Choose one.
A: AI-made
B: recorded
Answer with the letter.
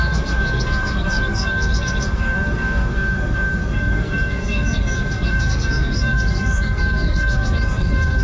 A